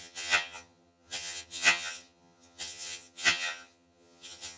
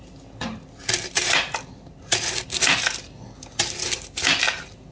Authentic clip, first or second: second